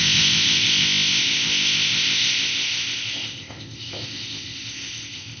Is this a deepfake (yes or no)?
yes